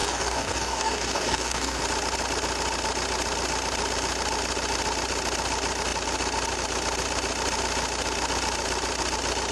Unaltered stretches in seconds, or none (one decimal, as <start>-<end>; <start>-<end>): 1.8-9.5